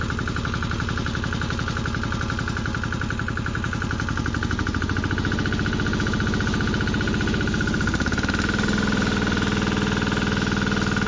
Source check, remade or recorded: recorded